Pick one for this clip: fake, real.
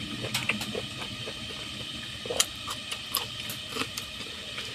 real